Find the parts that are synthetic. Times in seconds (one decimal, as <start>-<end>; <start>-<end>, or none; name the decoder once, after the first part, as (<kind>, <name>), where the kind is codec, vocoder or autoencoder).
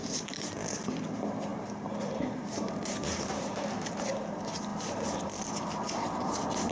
0.0-0.5 (vocoder, BigVGAN v2); 1.5-3.9